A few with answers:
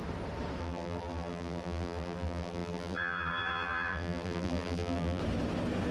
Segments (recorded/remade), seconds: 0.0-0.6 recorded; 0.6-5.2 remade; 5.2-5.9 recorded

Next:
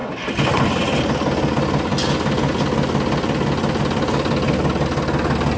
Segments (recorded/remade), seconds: 0.0-5.6 recorded

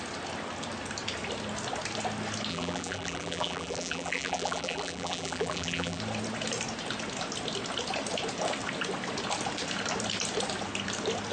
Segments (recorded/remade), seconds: 0.0-2.5 recorded; 2.5-6.0 remade; 6.0-11.3 recorded

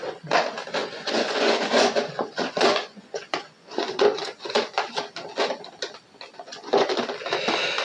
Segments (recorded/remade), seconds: 0.0-0.8 recorded; 0.8-4.9 remade; 4.9-6.3 recorded; 6.3-6.9 remade; 6.9-7.8 recorded

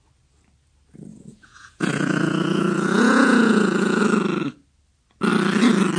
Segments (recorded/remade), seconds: 0.0-1.1 recorded; 1.1-4.0 remade; 4.0-6.0 recorded

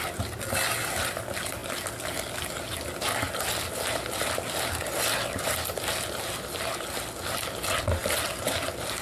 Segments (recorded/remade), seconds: 0.0-9.0 recorded

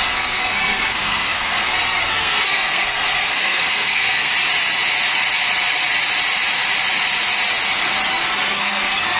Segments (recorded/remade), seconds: 0.0-4.3 remade; 4.3-8.1 recorded; 8.1-9.2 remade

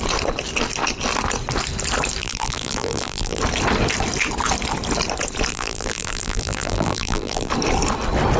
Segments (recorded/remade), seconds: 0.0-2.2 recorded; 2.2-3.4 remade; 3.4-5.5 recorded; 5.5-7.5 remade; 7.5-8.4 recorded